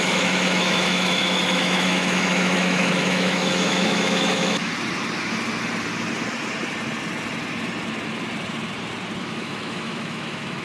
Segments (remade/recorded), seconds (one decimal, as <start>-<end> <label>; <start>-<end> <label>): 0.0-4.7 remade; 4.7-9.2 recorded; 9.2-10.6 remade